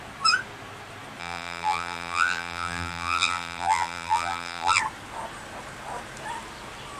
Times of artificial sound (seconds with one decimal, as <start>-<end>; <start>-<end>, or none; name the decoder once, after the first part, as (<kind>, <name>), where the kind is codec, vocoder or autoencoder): 1.2-4.8 (vocoder, BigVGAN v2)